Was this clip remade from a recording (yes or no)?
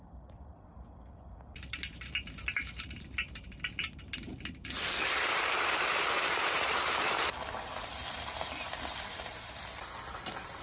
yes